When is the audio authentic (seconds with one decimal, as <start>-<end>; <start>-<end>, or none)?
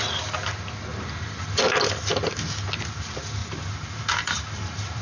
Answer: 0.0-0.9; 1.6-3.4